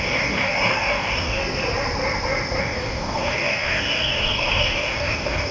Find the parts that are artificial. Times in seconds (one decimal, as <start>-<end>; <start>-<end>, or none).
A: 0.0-1.4; 2.6-5.5